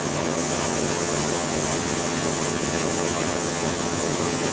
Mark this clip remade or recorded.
remade